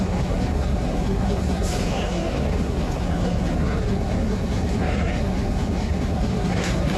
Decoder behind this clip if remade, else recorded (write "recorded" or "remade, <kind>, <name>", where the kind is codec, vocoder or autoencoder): remade, codec, SNAC